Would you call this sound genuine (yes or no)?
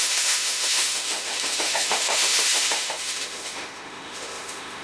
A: no